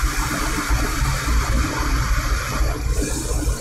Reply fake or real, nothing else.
real